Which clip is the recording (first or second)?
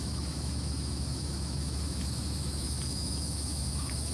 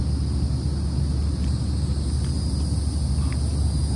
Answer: second